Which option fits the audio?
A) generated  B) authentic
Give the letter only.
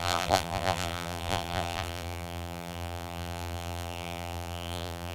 A